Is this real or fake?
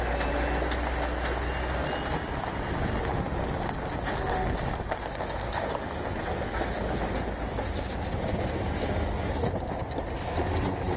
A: real